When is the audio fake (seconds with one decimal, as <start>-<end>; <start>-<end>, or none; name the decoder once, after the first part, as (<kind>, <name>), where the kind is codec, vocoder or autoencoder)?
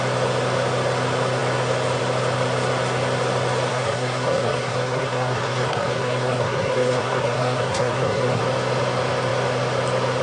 3.7-8.4 (codec, SNAC)